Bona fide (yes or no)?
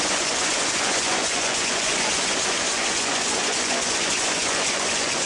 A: no